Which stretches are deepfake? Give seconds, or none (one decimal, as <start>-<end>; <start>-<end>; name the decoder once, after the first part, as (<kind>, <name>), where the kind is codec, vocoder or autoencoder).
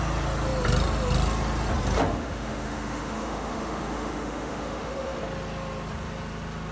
2.1-5.2 (autoencoder, DAC-VAE)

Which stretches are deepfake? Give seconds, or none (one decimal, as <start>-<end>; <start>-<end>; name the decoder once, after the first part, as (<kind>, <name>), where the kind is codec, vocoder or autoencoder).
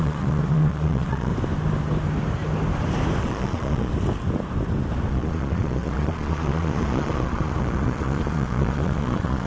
0.0-1.3 (vocoder, Vocos); 3.2-3.9; 5.1-9.5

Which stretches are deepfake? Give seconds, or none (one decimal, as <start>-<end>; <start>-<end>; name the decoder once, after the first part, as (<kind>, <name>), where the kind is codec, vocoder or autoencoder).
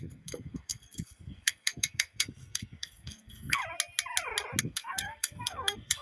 0.0-3.6 (codec, SNAC); 4.6-6.0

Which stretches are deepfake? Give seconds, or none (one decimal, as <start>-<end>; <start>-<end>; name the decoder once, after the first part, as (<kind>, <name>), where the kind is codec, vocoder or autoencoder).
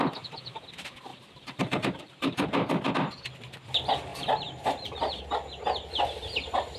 1.1-2.9 (vocoder, BigVGAN v2); 4.1-5.2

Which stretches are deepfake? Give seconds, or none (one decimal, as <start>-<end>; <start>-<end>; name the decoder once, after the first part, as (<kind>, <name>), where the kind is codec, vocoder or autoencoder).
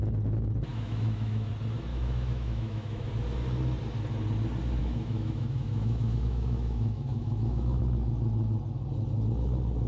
0.7-1.5 (autoencoder, DAC-VAE); 1.9-3.1; 4.8-7.8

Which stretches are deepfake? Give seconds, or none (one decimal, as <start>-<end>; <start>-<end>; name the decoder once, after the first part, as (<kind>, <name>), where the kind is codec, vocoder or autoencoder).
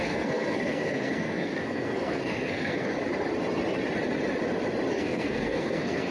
0.0-2.9 (codec, SNAC); 4.9-6.1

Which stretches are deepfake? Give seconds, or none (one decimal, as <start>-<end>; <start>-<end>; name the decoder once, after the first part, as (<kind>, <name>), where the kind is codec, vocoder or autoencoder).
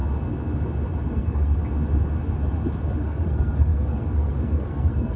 1.1-1.6 (codec, SNAC); 3.0-5.2